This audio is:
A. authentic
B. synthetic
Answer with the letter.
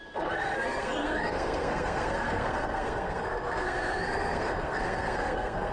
B